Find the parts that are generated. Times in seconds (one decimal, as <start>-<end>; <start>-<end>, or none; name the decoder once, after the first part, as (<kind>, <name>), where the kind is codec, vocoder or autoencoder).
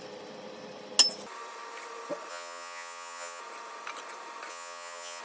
2.3-3.4 (vocoder, HiFi-GAN); 4.5-5.2